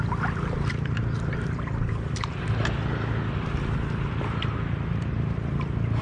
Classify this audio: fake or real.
real